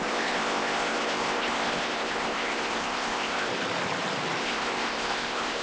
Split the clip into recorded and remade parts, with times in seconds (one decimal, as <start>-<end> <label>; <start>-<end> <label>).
0.0-3.5 remade; 3.5-4.4 recorded; 4.4-5.6 remade